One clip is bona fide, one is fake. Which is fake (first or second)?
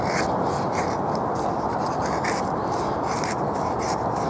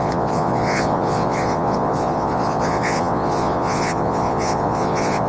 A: second